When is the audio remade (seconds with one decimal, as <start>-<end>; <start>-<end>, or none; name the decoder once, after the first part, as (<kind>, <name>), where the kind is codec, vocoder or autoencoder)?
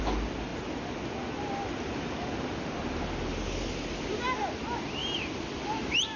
5.0-6.2 (vocoder, BigVGAN v2)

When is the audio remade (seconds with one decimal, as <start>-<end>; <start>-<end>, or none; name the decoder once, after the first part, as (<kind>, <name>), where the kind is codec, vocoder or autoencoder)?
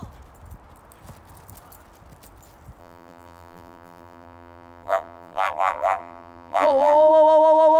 2.8-7.1 (vocoder, BigVGAN v2)